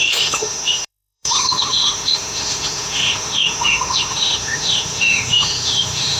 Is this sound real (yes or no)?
no